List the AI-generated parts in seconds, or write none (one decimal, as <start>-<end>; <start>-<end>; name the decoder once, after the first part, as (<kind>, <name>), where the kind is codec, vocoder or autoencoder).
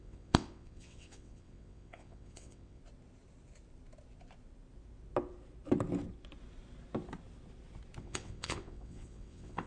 0.0-2.8 (vocoder, WaveNeXt); 8.0-9.7